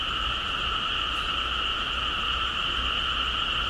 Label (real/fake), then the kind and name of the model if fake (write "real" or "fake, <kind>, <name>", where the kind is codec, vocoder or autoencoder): real